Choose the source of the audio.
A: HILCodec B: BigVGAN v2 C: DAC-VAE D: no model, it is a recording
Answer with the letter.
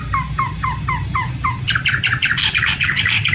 B